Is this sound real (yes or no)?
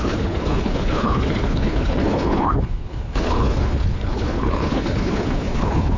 no